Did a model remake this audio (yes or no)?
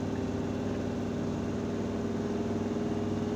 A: no